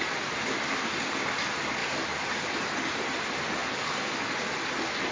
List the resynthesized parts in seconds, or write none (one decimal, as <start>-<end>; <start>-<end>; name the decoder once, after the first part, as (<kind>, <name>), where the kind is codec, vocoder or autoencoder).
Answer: none